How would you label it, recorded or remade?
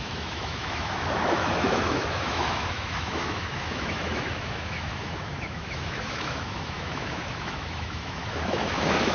remade